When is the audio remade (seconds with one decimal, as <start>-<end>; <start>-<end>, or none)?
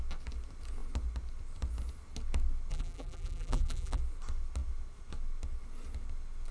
2.7-4.0